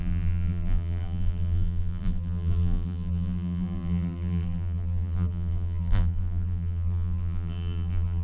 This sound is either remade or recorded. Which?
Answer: remade